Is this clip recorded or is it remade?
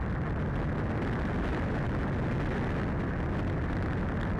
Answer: recorded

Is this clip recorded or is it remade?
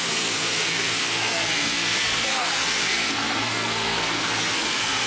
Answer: remade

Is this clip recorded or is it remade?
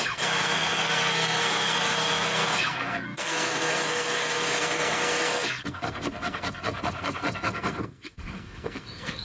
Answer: remade